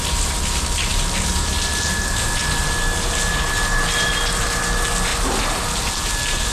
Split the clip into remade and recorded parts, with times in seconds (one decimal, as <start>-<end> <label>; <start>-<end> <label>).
0.0-6.5 recorded